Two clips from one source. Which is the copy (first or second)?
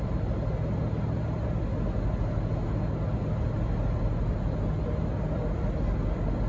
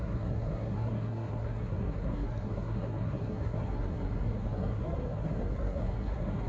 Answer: second